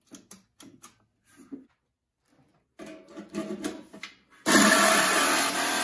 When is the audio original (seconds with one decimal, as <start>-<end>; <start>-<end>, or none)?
0.0-5.8